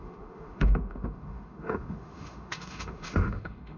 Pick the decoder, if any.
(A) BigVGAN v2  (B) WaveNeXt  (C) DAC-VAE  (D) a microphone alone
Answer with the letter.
C